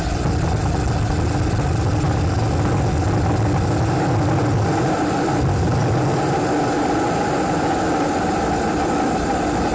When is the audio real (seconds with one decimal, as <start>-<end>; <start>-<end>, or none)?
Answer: 0.0-9.7